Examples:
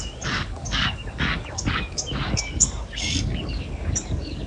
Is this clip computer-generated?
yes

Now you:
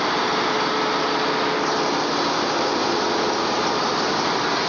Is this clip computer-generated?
no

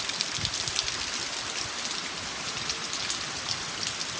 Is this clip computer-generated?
no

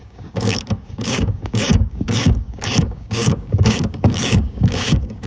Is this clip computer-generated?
yes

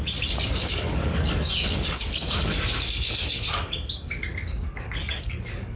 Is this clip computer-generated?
yes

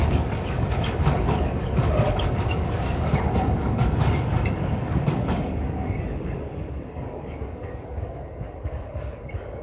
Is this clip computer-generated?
yes